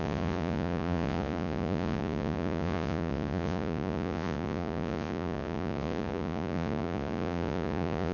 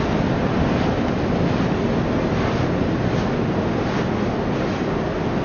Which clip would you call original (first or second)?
second